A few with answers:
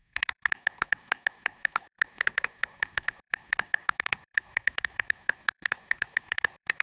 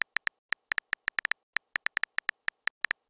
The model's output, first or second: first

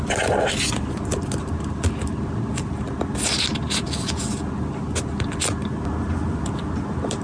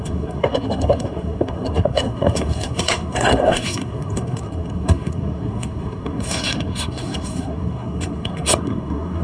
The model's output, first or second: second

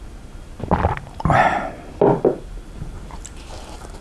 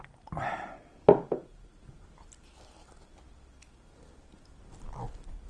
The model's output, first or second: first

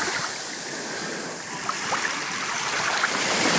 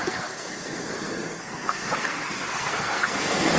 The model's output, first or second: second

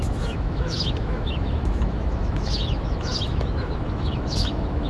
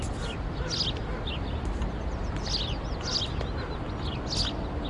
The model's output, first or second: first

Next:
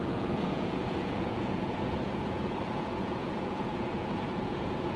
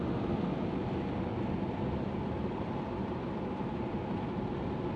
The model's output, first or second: first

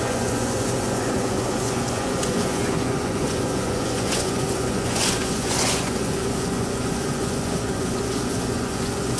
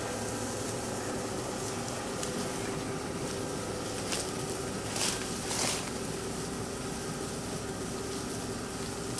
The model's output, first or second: first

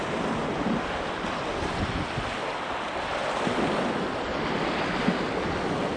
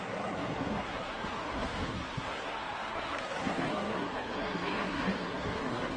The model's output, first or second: second